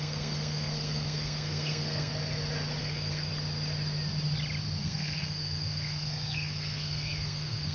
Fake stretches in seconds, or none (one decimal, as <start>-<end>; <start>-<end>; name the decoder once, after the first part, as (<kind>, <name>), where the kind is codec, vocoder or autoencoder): 0.0-2.1 (codec, SNAC); 2.8-3.3; 4.8-7.7